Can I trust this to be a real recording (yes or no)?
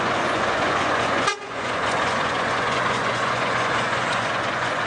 no